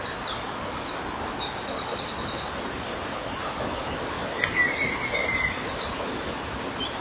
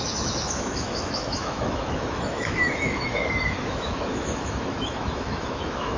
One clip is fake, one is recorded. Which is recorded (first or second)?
first